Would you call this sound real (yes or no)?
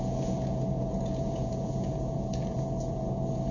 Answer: no